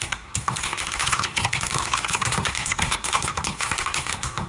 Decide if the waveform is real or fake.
fake